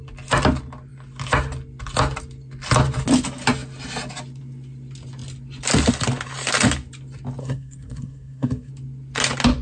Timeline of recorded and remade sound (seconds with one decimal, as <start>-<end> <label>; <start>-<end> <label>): 0.0-7.4 recorded; 7.4-8.7 remade; 8.7-9.6 recorded